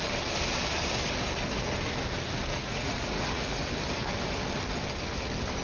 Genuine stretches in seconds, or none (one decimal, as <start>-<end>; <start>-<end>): 0.0-2.5; 3.7-5.6